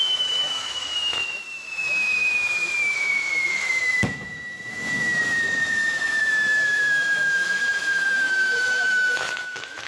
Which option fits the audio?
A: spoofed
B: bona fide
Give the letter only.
A